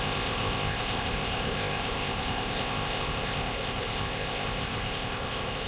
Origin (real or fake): fake